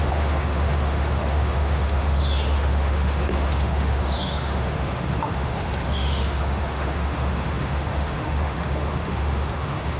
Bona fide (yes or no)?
no